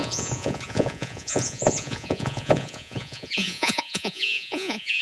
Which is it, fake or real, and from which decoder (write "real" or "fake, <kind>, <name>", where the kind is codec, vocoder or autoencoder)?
fake, vocoder, Vocos